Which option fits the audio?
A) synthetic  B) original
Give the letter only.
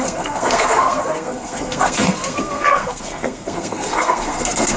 A